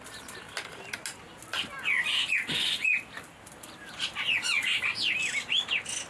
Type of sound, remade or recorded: recorded